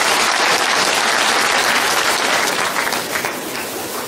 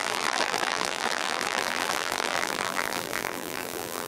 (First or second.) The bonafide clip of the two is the first